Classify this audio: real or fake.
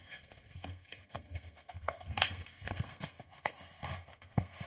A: fake